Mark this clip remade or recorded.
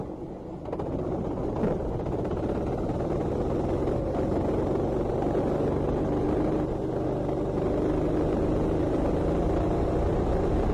recorded